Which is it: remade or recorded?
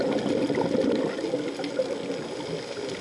recorded